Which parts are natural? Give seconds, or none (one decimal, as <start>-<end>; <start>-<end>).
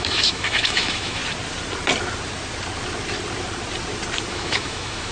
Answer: 1.2-4.3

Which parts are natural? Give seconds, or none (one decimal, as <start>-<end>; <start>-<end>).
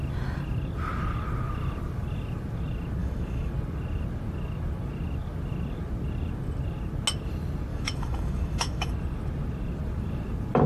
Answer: 0.0-3.0; 3.5-7.7; 8.9-10.7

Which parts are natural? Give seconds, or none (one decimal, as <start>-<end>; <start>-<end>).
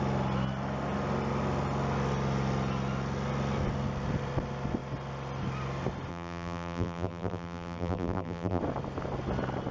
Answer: 0.0-6.1; 8.6-9.7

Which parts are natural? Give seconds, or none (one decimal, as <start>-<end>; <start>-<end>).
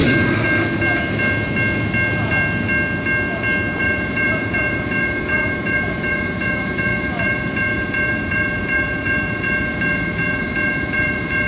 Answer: 0.0-3.8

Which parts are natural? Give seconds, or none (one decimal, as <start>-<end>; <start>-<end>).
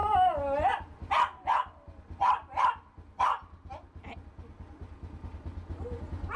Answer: 0.0-6.4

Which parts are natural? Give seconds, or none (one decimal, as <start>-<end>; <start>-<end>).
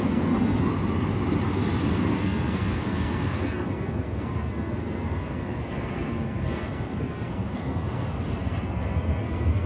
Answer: 0.7-1.8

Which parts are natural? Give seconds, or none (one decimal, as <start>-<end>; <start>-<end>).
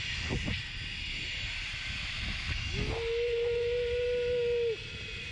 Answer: 0.0-5.3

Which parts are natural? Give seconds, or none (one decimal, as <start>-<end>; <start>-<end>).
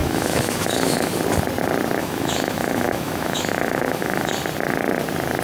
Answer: 1.1-2.0; 4.3-5.4